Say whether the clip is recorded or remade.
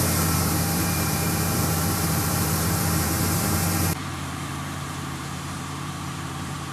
remade